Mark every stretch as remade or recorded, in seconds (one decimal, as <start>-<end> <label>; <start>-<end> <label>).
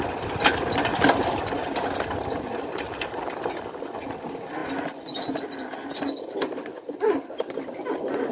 0.0-8.3 recorded